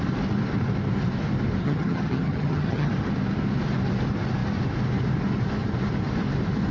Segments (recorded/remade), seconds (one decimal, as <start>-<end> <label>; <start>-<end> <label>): 0.0-1.6 recorded; 1.6-2.9 remade; 2.9-6.7 recorded